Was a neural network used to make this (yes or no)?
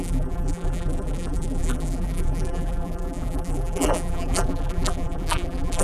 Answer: yes